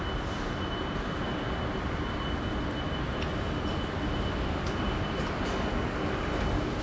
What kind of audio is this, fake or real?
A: real